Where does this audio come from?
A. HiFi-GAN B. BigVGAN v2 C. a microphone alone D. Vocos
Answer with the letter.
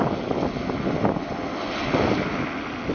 C